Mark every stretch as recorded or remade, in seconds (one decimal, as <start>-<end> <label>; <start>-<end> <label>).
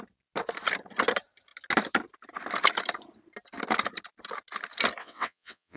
0.0-5.0 recorded; 5.0-5.8 remade